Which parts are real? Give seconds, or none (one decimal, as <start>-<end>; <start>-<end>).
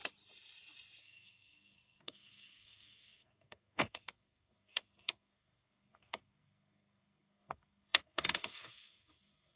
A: 0.0-1.0